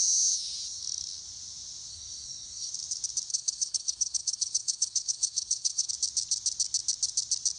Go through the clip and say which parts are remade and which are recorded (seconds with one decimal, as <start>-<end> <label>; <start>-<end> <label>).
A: 0.0-1.9 recorded; 1.9-2.7 remade; 2.7-3.3 recorded; 3.3-5.9 remade; 5.9-7.6 recorded